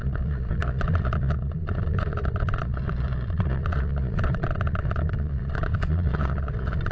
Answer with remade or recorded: remade